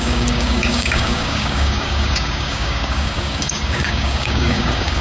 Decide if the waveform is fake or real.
fake